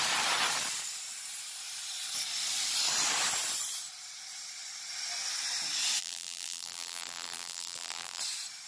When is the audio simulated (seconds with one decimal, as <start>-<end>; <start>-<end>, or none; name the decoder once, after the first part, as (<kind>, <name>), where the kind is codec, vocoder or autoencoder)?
6.0-8.2 (vocoder, BigVGAN v2)